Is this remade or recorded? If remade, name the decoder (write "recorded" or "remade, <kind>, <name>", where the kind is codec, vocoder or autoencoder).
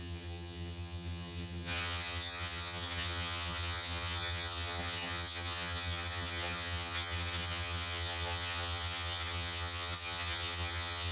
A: remade, vocoder, HiFi-GAN